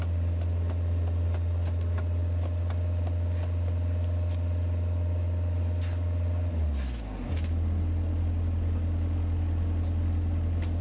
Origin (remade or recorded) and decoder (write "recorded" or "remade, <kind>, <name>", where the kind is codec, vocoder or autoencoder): recorded